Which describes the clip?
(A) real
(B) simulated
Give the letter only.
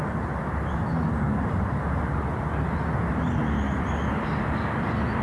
A